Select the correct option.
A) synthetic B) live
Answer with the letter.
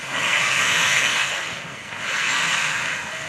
A